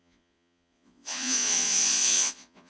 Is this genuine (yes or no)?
no